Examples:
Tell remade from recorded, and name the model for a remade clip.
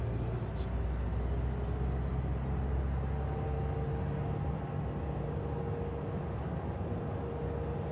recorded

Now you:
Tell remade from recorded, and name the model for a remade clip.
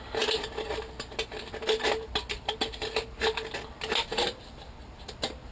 recorded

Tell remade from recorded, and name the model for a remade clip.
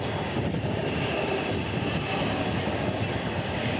recorded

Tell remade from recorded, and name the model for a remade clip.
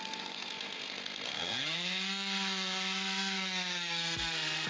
remade, codec, SNAC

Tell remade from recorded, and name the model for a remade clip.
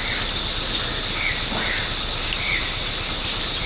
recorded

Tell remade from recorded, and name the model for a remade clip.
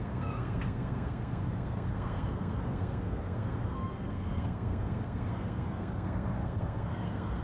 remade, codec, SNAC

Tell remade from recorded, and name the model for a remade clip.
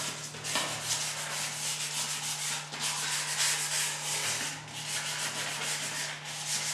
recorded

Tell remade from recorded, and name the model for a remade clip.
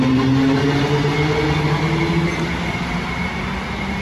recorded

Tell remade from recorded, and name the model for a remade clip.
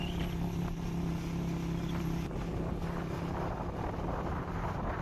recorded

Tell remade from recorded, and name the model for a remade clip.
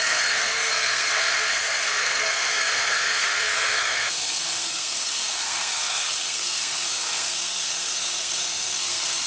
remade, codec, SNAC